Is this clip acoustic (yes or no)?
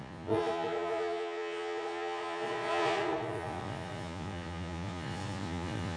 no